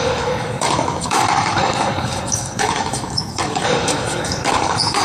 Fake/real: fake